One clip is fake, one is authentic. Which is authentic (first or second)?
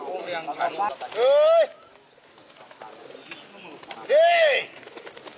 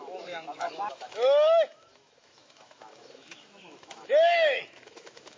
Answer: first